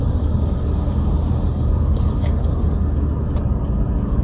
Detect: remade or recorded recorded